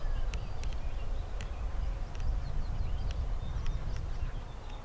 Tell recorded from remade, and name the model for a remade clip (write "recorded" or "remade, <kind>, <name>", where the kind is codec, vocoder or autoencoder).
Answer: recorded